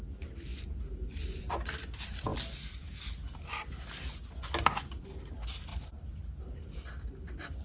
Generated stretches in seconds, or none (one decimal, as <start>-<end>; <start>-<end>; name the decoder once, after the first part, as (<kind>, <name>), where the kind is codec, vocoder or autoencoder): none